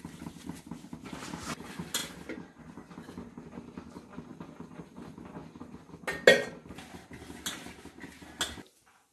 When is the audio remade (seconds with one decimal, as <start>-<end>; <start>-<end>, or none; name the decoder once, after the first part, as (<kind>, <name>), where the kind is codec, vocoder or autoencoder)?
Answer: none